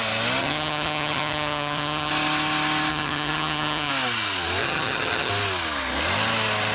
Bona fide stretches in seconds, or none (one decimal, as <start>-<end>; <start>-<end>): 0.0-0.4; 2.1-2.9; 3.9-4.6; 5.3-6.7

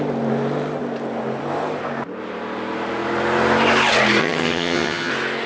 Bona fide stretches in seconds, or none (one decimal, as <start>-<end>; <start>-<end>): 0.0-4.2; 5.1-5.5

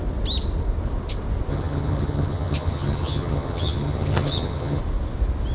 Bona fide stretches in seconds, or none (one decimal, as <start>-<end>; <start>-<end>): 0.0-1.5; 4.8-5.5

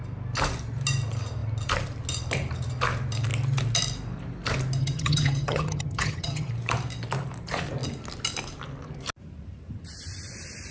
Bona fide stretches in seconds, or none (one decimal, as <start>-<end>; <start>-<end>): 0.0-4.8; 6.5-10.7

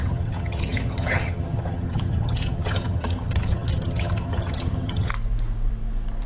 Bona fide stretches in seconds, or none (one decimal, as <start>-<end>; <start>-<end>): 5.1-6.3

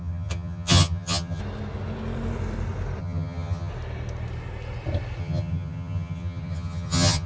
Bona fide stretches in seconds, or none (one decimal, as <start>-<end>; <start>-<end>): 1.4-3.0; 3.7-5.2

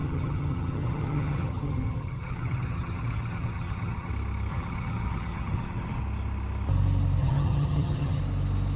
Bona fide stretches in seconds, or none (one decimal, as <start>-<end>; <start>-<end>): 4.1-4.5; 6.0-7.2; 8.2-8.8

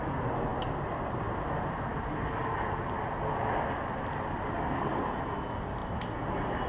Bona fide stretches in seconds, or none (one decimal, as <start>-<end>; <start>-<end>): 0.0-6.7